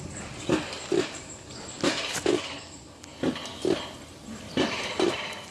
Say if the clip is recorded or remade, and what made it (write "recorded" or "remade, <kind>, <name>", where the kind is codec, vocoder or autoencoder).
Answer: recorded